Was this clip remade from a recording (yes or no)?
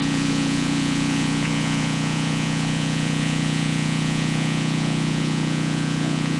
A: yes